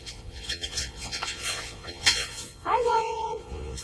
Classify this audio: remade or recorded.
remade